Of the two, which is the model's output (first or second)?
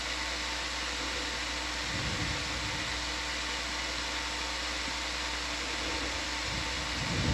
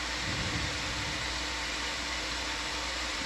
second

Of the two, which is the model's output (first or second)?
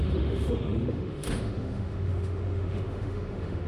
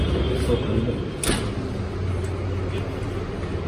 first